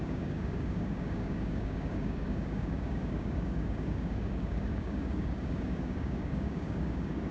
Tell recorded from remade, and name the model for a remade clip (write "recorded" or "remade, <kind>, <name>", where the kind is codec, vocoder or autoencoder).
remade, codec, DAC